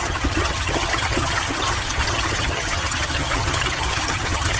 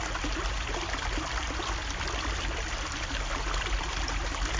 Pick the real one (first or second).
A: second